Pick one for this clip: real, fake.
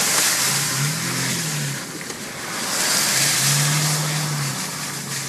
real